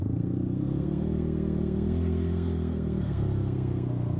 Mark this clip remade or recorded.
remade